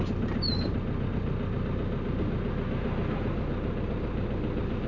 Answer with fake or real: real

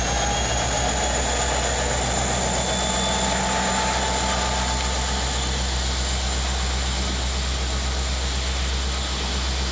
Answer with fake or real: real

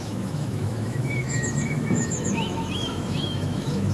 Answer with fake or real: fake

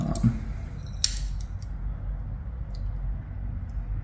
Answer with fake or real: real